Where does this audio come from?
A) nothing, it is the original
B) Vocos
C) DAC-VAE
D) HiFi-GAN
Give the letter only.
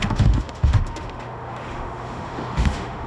C